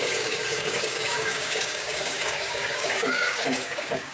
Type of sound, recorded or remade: remade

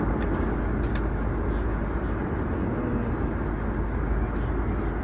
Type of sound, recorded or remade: recorded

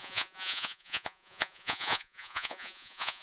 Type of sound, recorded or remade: remade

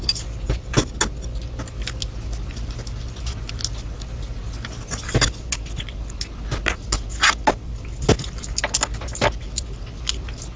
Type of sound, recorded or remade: recorded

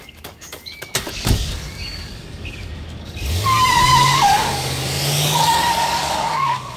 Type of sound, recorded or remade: remade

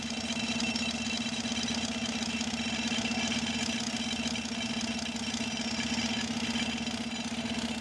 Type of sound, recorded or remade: recorded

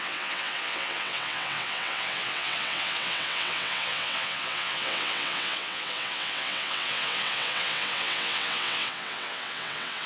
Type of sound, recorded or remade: remade